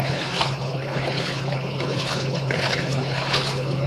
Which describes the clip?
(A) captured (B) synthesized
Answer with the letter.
B